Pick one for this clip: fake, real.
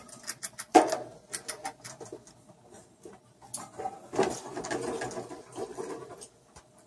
real